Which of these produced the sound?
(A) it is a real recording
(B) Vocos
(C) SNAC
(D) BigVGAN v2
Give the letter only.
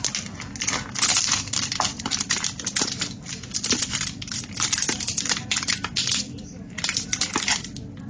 A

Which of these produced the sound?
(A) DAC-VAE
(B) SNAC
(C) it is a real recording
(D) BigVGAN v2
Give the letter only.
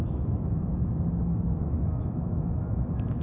A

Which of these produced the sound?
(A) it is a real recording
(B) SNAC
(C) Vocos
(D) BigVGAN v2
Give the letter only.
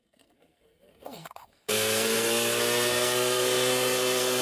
B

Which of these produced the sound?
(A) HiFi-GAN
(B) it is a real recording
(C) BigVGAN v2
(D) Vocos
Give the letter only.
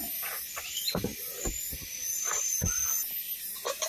B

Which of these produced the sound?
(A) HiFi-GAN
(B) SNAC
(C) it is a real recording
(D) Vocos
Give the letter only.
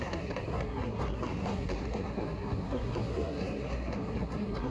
B